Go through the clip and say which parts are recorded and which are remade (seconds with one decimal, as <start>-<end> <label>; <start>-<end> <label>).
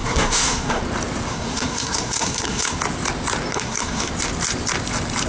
0.0-0.8 remade; 0.8-1.3 recorded; 1.3-2.8 remade; 2.8-3.5 recorded; 3.5-4.1 remade; 4.1-5.3 recorded